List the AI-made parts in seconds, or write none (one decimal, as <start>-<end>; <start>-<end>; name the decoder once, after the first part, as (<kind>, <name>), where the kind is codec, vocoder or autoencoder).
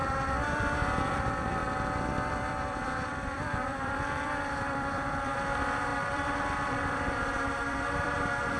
0.0-1.6 (vocoder, BigVGAN v2); 2.3-8.6